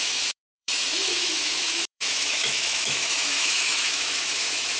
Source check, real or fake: fake